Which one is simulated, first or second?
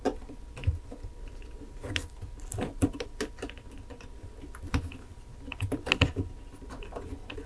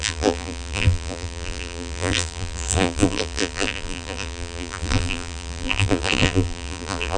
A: second